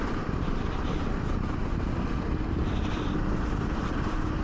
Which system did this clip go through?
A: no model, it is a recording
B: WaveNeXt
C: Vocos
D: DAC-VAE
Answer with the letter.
A